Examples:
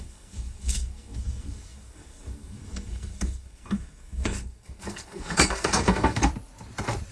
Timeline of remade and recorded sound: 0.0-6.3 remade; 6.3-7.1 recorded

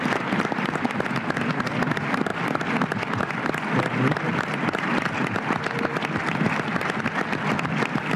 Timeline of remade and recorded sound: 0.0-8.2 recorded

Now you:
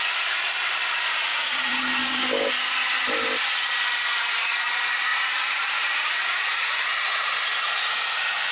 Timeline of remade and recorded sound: 0.0-1.3 recorded; 1.3-1.8 remade; 1.8-5.1 recorded; 5.1-7.7 remade; 7.7-8.5 recorded